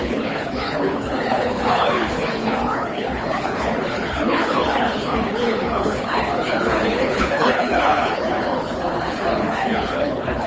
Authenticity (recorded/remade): remade